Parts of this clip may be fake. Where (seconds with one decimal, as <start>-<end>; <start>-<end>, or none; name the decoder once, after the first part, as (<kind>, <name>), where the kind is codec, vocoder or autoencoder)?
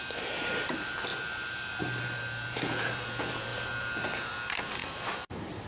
0.0-5.7 (vocoder, BigVGAN v2)